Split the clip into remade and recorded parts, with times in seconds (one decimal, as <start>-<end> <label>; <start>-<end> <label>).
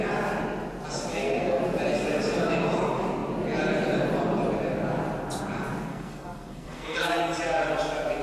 0.0-1.1 recorded; 1.1-1.6 remade; 1.6-5.9 recorded; 5.9-7.4 remade; 7.4-8.2 recorded